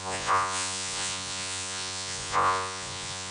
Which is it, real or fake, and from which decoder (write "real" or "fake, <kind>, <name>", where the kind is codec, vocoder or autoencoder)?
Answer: fake, vocoder, Vocos